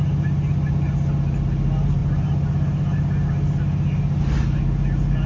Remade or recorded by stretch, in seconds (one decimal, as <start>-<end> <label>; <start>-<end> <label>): 0.0-5.3 recorded